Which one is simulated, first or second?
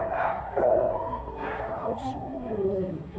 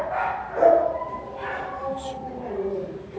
first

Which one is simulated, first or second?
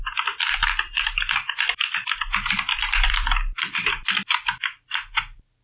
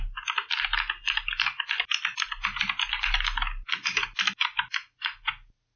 first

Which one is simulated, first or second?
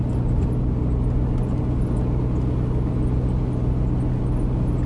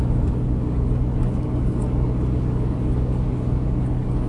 second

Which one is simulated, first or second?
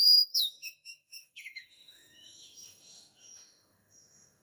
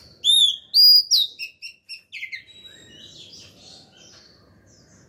first